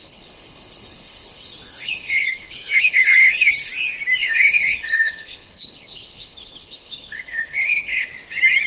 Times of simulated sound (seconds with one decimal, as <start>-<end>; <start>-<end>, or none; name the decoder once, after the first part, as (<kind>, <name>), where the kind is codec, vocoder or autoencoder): 0.0-3.7 (codec, HILCodec); 4.2-8.1